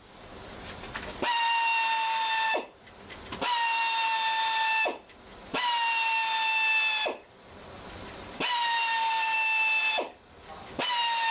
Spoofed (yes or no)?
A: no